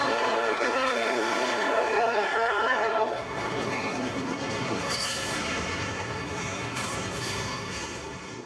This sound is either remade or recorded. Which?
remade